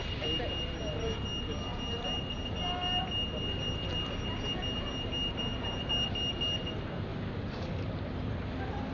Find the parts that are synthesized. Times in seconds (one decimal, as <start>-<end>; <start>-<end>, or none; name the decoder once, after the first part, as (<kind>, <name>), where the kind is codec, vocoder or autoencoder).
none